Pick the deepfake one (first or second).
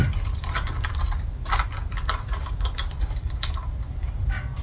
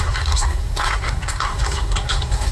second